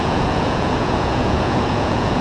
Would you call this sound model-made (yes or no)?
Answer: yes